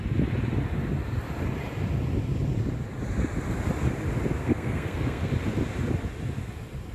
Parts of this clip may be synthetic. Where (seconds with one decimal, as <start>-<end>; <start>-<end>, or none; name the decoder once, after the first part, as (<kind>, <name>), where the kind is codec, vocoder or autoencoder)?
4.4-5.3 (codec, SNAC)